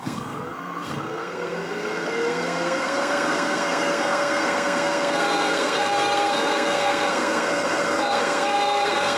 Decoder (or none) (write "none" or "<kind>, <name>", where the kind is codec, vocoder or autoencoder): codec, SNAC